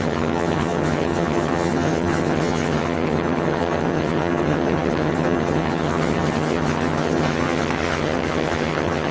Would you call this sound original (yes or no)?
no